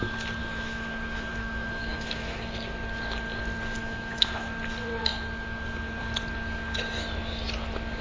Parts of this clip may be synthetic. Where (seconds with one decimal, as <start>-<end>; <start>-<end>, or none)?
0.4-2.4; 3.8-4.4